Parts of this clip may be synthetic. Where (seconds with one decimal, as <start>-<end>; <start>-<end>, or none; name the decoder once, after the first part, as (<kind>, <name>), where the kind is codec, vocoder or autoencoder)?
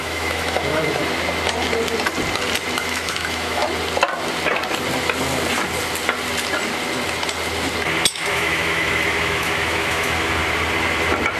0.0-1.0 (autoencoder, DAC-VAE); 2.8-3.6; 8.1-10.4